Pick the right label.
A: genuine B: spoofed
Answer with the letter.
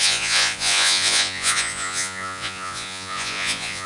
B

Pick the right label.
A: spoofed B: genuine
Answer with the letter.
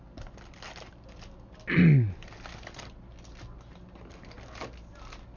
B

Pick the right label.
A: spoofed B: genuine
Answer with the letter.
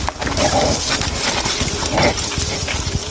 B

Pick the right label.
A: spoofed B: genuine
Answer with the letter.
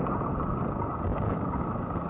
B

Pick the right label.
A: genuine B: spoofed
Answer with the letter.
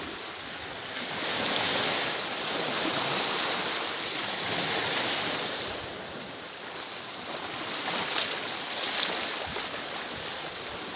A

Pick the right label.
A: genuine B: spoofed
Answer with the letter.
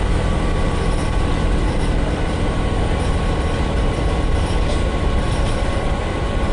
B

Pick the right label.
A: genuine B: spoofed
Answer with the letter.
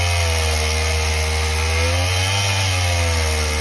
A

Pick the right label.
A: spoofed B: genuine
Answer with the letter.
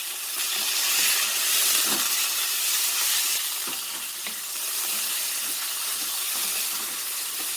B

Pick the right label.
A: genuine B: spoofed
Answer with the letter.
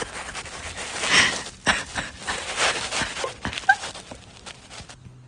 A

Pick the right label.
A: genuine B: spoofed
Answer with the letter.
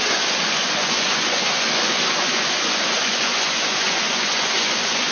B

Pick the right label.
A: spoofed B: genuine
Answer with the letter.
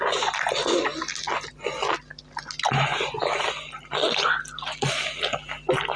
B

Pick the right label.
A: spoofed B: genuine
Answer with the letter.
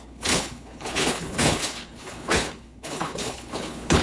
A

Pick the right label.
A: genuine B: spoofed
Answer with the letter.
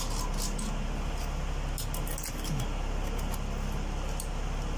A